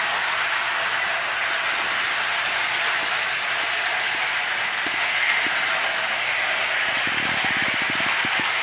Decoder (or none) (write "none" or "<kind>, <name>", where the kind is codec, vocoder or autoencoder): none